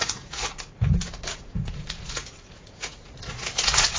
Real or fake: fake